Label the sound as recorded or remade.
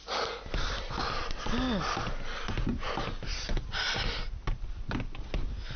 recorded